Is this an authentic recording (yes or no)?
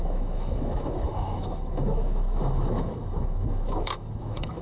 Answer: no